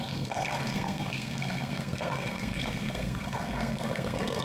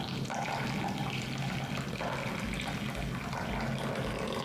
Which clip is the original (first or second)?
second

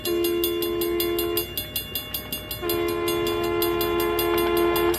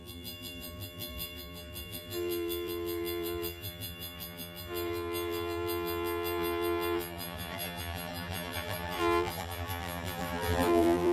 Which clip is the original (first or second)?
first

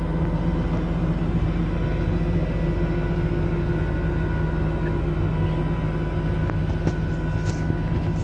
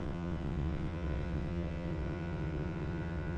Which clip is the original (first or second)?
first